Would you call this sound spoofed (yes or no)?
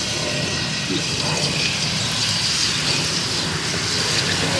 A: no